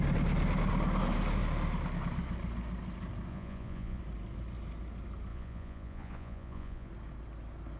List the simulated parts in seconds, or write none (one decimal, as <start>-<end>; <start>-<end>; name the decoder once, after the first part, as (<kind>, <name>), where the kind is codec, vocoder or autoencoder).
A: 3.3-4.0 (vocoder, Vocos); 5.3-6.9